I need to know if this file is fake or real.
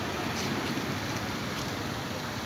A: real